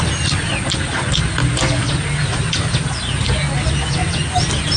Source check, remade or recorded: recorded